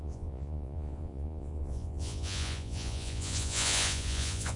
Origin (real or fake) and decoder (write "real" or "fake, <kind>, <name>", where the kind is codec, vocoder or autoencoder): fake, vocoder, Vocos